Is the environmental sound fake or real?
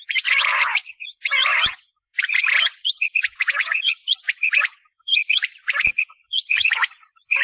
fake